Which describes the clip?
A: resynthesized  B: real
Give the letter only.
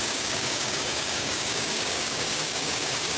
A